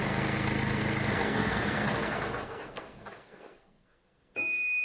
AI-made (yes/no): yes